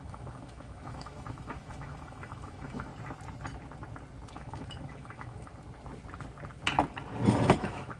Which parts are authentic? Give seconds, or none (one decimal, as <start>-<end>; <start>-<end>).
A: 2.9-4.3; 5.5-7.3